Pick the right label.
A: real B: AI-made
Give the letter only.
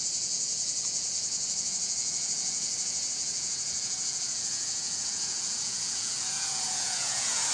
B